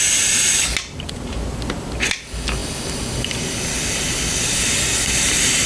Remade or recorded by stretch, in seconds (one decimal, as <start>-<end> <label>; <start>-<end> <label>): 0.0-5.7 recorded